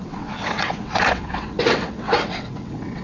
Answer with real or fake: fake